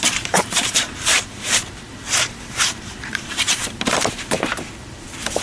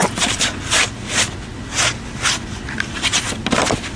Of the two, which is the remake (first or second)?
first